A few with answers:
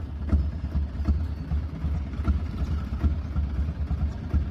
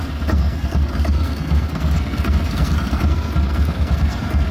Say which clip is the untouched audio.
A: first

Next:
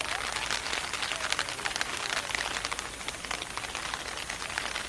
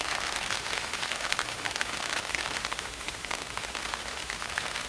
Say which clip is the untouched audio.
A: first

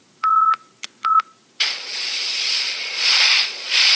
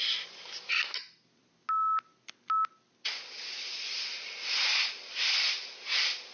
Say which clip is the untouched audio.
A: second